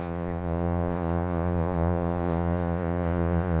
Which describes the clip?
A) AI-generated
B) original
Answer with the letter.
A